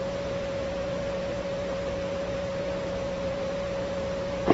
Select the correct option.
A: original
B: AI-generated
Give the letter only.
A